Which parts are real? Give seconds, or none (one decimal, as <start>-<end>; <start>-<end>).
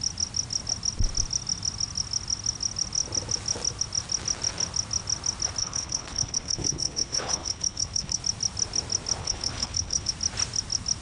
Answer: 0.0-5.6; 8.2-9.2; 10.1-11.0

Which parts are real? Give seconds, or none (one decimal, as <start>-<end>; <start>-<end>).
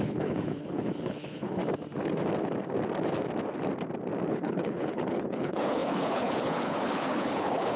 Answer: 1.6-4.3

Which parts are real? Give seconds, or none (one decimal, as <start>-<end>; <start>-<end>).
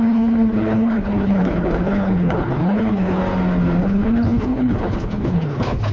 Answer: 3.2-3.8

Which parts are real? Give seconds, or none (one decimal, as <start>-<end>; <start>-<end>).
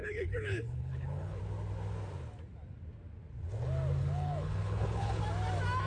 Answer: 1.4-4.0; 5.2-5.9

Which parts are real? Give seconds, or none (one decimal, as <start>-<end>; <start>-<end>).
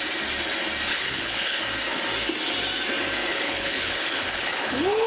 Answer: 0.0-0.9; 1.6-3.3